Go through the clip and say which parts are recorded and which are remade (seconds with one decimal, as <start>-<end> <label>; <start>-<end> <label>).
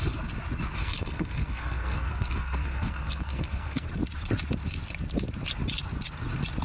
0.0-0.8 recorded; 0.8-3.9 remade; 3.9-6.6 recorded